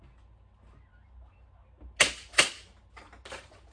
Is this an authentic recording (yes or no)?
yes